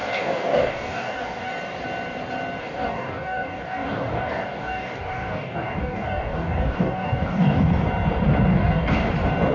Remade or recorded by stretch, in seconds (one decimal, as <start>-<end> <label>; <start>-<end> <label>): 0.0-1.5 remade; 1.5-2.6 recorded; 2.6-7.7 remade; 7.7-8.5 recorded; 8.5-9.1 remade; 9.1-9.5 recorded